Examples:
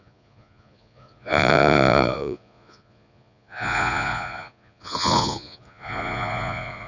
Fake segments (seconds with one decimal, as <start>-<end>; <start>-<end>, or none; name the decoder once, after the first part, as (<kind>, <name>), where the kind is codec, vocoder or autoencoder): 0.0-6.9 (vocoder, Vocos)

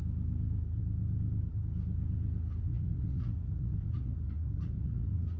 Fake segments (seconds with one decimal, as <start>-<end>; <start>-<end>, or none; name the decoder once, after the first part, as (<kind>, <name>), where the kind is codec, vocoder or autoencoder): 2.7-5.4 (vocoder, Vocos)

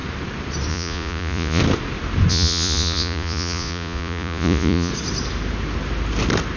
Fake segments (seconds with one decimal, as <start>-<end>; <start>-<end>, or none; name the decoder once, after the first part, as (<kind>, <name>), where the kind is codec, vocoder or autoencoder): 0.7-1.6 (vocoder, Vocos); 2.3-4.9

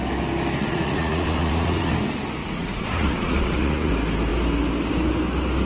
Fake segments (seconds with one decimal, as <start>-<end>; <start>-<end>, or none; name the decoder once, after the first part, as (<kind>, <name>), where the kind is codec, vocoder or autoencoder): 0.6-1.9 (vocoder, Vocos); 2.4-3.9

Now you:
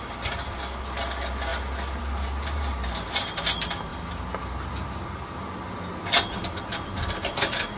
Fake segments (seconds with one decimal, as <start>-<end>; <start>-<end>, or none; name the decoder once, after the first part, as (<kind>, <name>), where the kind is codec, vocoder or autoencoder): none

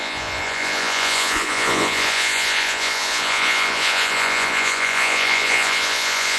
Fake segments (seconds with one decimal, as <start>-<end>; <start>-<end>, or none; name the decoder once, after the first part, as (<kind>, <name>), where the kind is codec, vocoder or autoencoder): 0.0-6.4 (vocoder, Vocos)

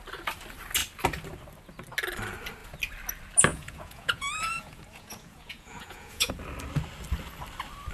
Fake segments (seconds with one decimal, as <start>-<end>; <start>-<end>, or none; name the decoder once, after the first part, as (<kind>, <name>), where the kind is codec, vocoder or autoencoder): 3.5-6.3 (vocoder, Vocos)

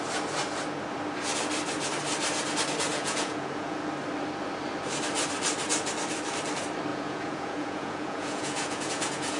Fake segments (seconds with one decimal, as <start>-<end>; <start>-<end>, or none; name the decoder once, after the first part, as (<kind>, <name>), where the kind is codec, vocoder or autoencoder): 2.9-3.8 (vocoder, Vocos); 6.9-9.4